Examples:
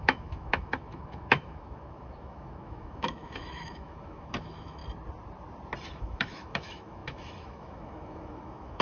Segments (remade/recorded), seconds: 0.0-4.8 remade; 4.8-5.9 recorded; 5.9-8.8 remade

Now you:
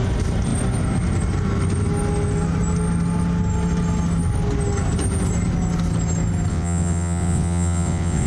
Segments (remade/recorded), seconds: 0.0-6.5 recorded; 6.5-8.3 remade

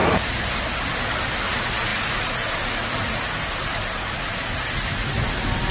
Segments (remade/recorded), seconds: 0.0-5.7 recorded

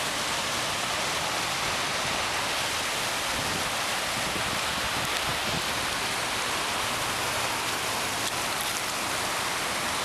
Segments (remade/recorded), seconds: 0.0-10.0 recorded

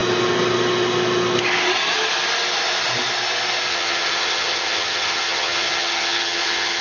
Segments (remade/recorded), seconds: 0.0-3.7 recorded; 3.7-6.8 remade

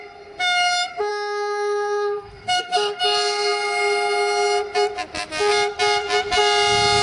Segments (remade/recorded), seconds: 0.0-1.1 recorded; 1.1-3.0 remade; 3.0-7.0 recorded

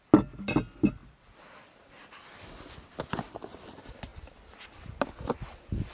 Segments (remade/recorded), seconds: 0.0-5.9 recorded